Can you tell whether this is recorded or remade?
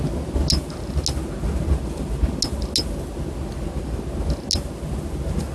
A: recorded